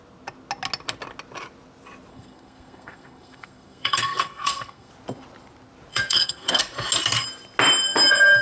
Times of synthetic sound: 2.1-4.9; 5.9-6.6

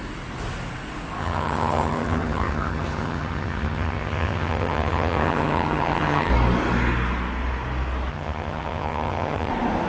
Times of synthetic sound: 1.2-6.3; 8.1-9.5

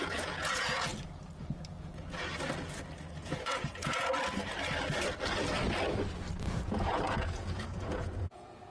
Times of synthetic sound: 0.0-0.9; 1.4-2.3; 3.2-4.1; 6.5-8.7